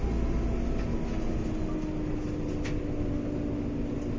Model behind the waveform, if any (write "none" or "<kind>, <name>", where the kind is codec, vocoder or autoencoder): none